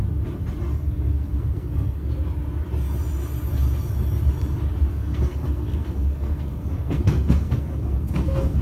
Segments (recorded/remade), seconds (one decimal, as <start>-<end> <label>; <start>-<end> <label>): 0.0-0.7 recorded; 0.7-2.1 remade; 2.1-4.9 recorded; 4.9-8.6 remade